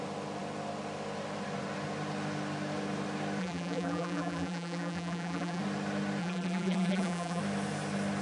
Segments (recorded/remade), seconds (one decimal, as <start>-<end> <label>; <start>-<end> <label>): 0.0-3.4 recorded; 3.4-5.6 remade; 5.6-6.2 recorded; 6.2-7.4 remade; 7.4-8.2 recorded